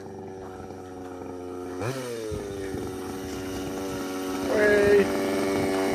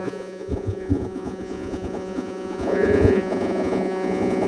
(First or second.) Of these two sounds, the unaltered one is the first